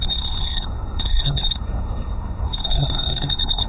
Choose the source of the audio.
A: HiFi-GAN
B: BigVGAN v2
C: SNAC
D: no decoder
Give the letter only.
C